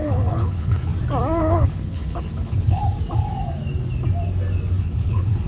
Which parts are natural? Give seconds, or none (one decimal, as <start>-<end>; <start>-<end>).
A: 0.9-1.4; 2.8-4.8